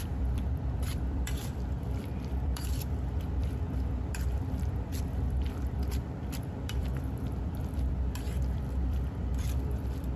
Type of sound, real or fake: fake